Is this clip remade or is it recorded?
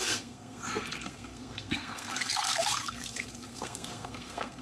remade